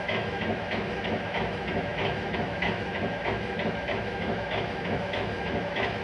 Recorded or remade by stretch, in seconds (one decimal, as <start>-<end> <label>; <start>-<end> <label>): 0.0-6.0 remade